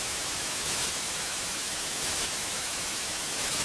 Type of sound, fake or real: fake